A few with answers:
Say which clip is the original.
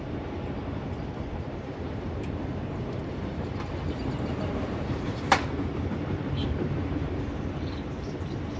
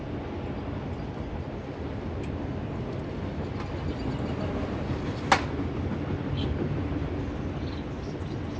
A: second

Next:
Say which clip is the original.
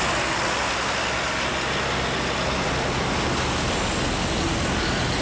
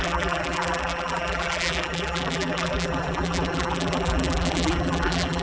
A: first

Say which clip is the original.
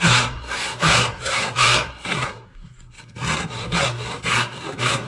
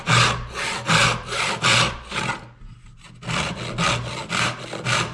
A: second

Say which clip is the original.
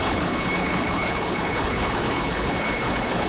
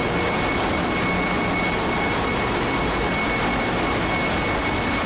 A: second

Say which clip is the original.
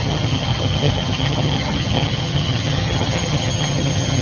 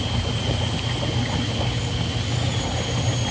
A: second